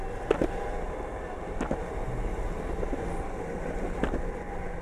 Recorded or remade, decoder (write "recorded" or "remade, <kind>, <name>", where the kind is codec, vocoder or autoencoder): recorded